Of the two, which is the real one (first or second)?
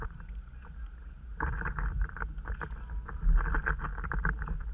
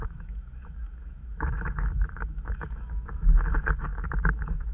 first